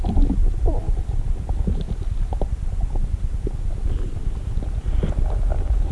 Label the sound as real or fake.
fake